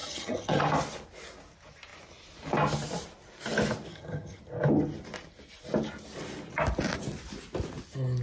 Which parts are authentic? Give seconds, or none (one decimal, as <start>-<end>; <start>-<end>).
0.6-3.9; 4.4-8.2